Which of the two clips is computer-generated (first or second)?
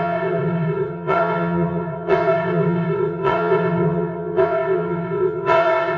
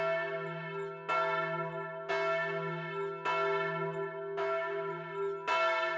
first